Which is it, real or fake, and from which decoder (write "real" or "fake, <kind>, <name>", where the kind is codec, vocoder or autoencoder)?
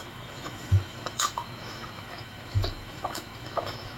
fake, autoencoder, DAC-VAE